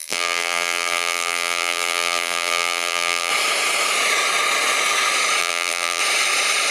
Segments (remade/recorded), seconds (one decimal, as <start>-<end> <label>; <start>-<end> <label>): 0.0-3.3 remade; 3.3-5.4 recorded; 5.4-6.0 remade; 6.0-6.7 recorded